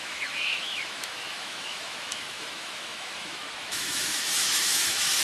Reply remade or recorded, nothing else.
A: remade